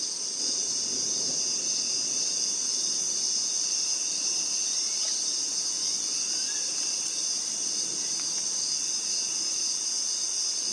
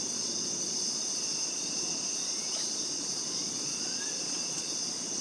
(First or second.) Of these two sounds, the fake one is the second